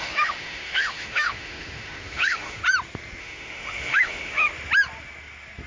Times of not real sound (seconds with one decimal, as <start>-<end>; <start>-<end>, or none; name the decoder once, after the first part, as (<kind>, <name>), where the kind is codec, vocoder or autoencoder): 0.0-2.6 (autoencoder, DAC-VAE); 3.2-4.5